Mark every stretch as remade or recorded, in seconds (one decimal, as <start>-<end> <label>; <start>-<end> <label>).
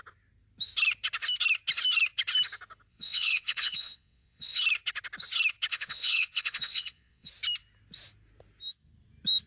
0.0-2.9 recorded; 2.9-4.6 remade; 4.6-5.7 recorded; 5.7-7.3 remade; 7.3-9.5 recorded